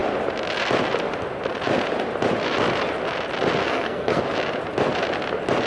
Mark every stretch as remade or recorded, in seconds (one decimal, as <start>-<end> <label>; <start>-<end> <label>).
0.0-3.6 recorded; 3.6-4.2 remade; 4.2-5.7 recorded